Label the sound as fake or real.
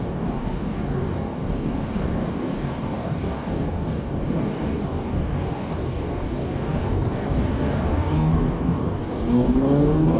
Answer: fake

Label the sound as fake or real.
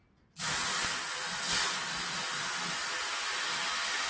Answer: real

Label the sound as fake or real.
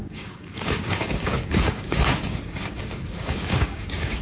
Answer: fake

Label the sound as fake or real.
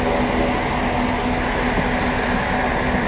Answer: real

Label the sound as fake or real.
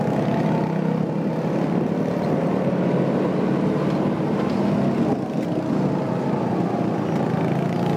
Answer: real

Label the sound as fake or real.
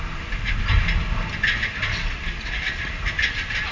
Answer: real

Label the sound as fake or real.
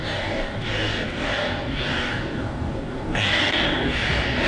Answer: fake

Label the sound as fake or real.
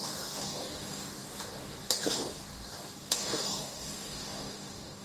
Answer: fake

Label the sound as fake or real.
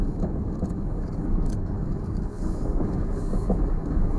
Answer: fake